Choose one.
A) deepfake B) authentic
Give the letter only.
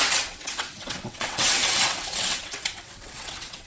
A